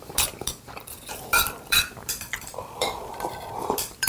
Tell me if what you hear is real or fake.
fake